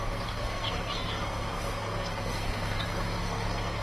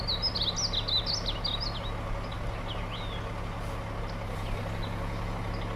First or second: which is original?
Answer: second